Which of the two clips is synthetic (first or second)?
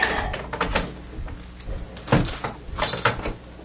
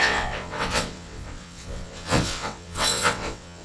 second